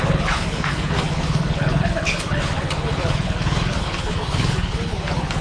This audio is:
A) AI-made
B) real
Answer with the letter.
A